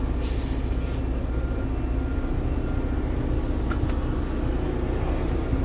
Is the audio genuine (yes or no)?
yes